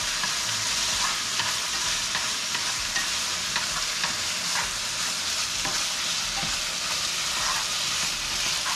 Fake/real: real